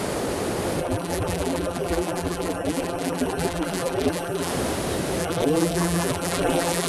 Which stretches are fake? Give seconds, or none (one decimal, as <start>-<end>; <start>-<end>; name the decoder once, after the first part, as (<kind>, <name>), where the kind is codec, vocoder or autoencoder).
0.8-4.5 (vocoder, BigVGAN v2); 5.2-6.9